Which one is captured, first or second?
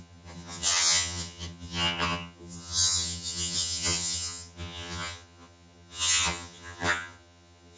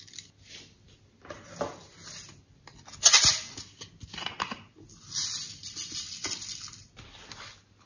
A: second